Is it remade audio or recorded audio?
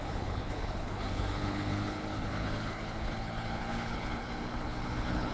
remade